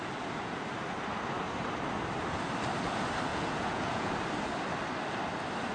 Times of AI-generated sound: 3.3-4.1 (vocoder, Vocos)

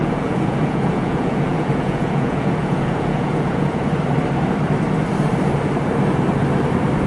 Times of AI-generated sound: 0.0-3.8 (vocoder, Vocos)

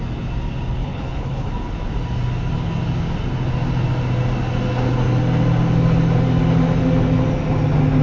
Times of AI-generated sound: 0.8-1.5 (codec, HILCodec)

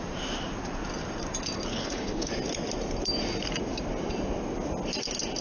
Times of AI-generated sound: 1.7-2.3 (codec, HILCodec)

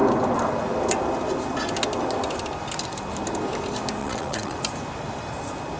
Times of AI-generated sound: 4.0-4.6 (vocoder, WaveNeXt)

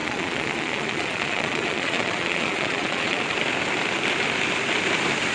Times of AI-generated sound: 0.0-3.2 (vocoder, Vocos)

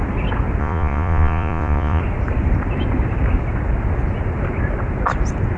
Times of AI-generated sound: 0.6-2.0 (vocoder, Vocos)

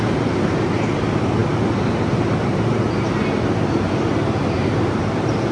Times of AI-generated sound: none